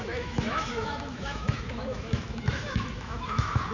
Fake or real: fake